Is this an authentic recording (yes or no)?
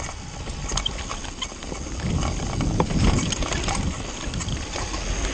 yes